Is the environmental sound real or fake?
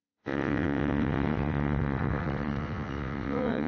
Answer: fake